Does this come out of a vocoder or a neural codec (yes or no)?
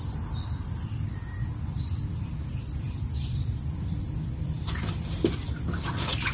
yes